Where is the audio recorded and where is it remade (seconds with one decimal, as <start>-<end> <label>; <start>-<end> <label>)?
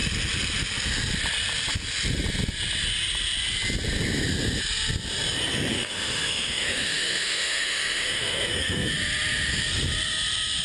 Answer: 0.0-5.7 recorded; 5.7-8.9 remade; 8.9-10.6 recorded